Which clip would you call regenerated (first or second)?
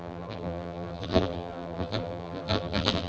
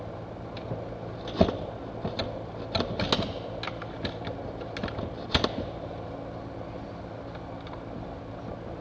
first